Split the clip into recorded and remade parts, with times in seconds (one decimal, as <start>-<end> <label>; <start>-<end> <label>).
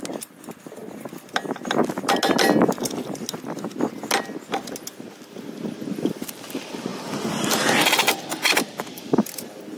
0.0-9.8 recorded